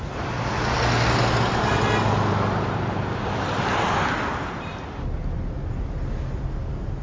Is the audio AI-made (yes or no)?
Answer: no